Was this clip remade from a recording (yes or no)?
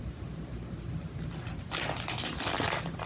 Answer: no